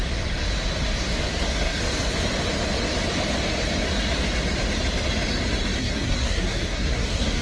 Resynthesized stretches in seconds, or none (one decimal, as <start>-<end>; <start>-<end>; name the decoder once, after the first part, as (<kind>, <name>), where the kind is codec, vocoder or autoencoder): 1.3-1.8 (codec, SNAC); 5.8-7.4